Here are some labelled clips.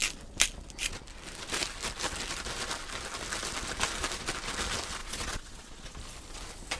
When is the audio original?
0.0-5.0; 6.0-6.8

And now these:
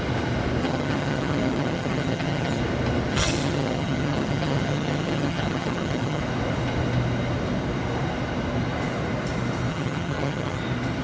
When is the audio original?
0.0-0.6; 2.6-3.1; 6.2-9.7; 10.6-11.0

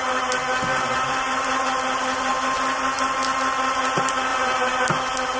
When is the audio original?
0.0-0.7; 1.6-4.3; 4.9-5.4